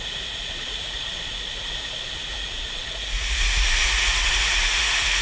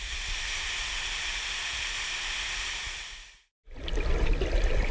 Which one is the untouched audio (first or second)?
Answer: second